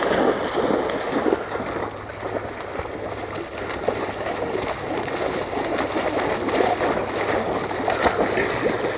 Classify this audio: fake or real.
real